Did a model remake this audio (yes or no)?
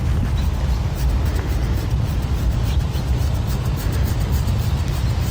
no